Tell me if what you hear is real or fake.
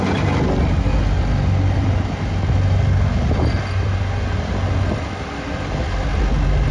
real